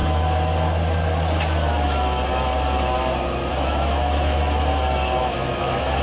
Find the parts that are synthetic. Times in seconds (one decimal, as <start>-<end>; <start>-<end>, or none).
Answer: 3.6-4.4; 5.2-6.0